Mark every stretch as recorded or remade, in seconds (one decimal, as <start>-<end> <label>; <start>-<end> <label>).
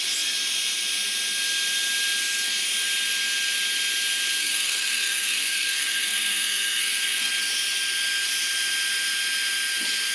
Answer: 0.0-4.4 recorded; 4.4-7.3 remade; 7.3-10.1 recorded